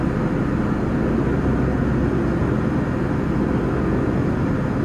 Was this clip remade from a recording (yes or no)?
no